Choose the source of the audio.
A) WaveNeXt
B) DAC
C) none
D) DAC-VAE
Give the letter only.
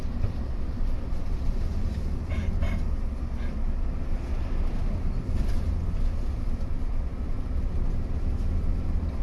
C